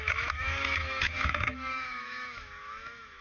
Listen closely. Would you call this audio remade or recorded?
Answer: remade